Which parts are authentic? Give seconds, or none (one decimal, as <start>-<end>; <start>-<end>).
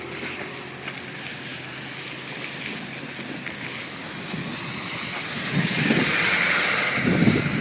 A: 0.0-7.6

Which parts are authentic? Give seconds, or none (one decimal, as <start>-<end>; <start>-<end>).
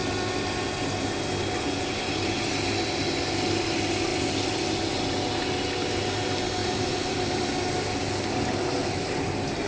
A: 0.0-6.6; 7.7-9.7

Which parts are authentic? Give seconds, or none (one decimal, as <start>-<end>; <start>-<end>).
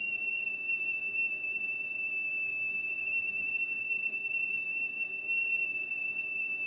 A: 1.0-2.5